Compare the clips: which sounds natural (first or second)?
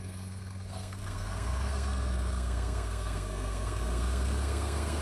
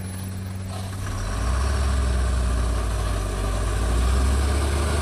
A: second